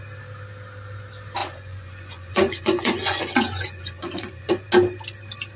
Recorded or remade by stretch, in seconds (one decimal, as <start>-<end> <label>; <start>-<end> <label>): 0.0-1.4 recorded; 1.4-4.5 remade; 4.5-5.6 recorded